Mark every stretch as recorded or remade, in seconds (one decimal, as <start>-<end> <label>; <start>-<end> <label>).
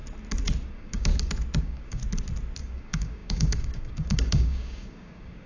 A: 0.0-0.7 recorded; 0.7-1.1 remade; 1.1-1.6 recorded; 1.6-2.0 remade; 2.0-2.6 recorded; 2.6-5.5 remade